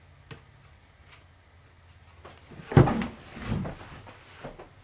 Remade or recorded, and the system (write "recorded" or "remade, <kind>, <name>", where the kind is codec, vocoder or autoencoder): recorded